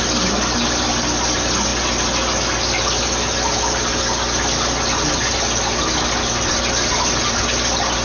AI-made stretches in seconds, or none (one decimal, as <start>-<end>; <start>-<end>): none